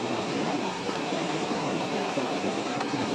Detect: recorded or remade remade